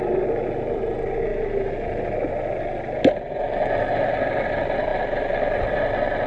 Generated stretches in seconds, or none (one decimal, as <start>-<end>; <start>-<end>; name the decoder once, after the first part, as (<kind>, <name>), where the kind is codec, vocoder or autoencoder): none